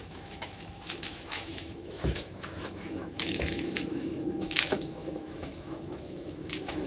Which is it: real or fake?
fake